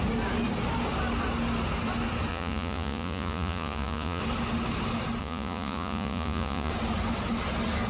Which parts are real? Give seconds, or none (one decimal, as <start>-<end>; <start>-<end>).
0.0-2.3; 4.2-5.2; 6.7-7.9